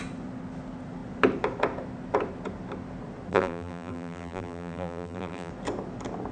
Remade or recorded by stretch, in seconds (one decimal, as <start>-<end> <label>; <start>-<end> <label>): 0.0-3.3 recorded; 3.3-5.5 remade; 5.5-6.3 recorded